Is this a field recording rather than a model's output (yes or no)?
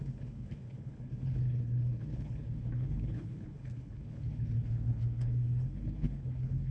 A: no